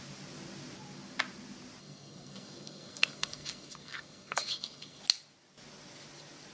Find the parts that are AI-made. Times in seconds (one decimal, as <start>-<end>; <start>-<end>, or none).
1.8-5.0